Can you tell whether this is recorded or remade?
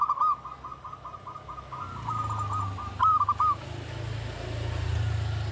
recorded